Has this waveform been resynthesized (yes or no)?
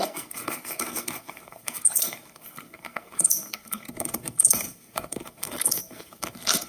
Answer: yes